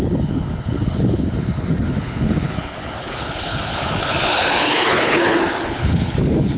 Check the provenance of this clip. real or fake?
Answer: fake